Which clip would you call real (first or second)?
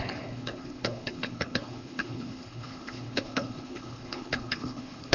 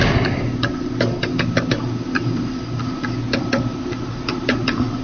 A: second